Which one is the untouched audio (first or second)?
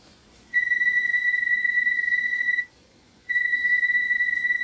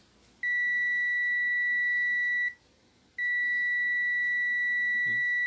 second